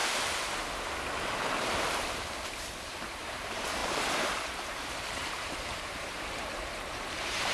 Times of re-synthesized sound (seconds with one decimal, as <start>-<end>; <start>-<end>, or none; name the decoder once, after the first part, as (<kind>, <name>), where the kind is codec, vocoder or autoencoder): 2.1-7.5 (vocoder, BigVGAN v2)